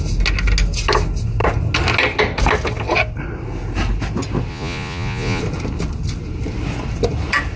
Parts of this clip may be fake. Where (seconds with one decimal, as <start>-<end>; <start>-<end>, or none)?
4.5-5.4